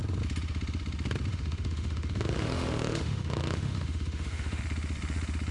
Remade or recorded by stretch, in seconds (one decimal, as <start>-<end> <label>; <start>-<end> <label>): 0.0-1.3 recorded; 1.3-4.6 remade; 4.6-5.5 recorded